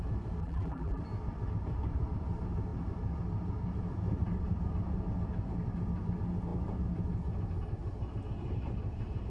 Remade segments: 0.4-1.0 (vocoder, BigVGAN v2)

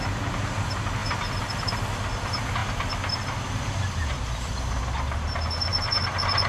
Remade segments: 2.6-4.8 (vocoder, BigVGAN v2)

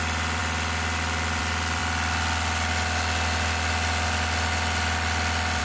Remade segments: none

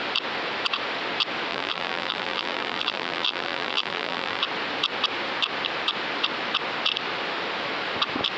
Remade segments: 1.5-4.4 (vocoder, BigVGAN v2)

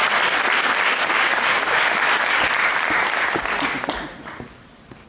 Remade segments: 0.9-1.8 (codec, DAC)